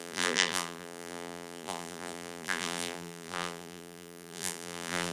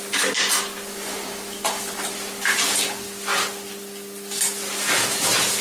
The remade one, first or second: first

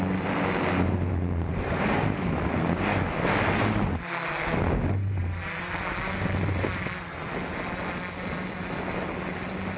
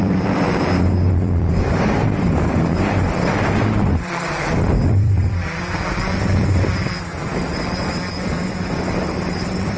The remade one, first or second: second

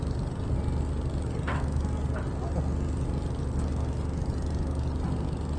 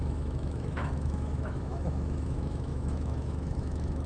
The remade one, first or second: second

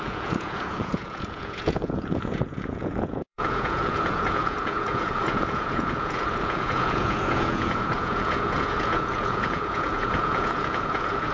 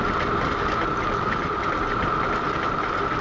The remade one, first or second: first